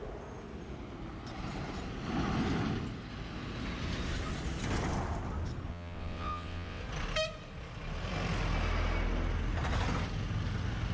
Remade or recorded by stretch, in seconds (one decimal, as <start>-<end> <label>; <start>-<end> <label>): 0.0-5.7 recorded; 5.7-6.8 remade; 6.8-10.9 recorded